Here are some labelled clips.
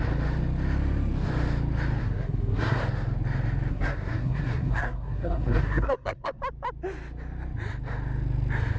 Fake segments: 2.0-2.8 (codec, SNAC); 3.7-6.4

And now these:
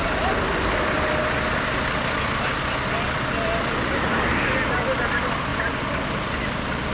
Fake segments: none

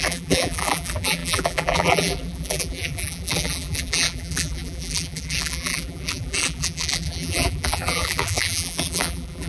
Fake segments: 0.0-9.5 (vocoder, BigVGAN v2)

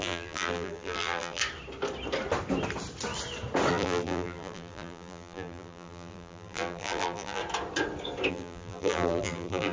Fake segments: 0.0-1.4 (vocoder, BigVGAN v2); 3.7-7.4; 8.3-9.7